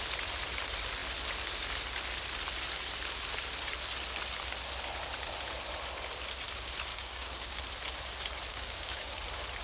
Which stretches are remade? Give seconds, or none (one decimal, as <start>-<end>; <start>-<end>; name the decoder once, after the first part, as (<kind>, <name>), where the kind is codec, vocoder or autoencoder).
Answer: 6.9-7.6 (codec, DAC); 8.5-9.2